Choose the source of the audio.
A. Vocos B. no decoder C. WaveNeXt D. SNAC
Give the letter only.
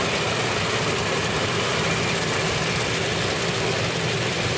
B